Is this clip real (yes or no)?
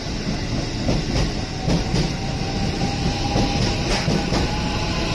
yes